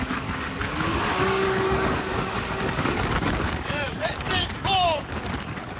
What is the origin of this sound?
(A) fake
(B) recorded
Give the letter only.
A